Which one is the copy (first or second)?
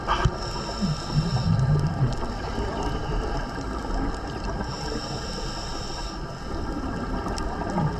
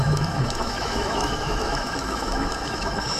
second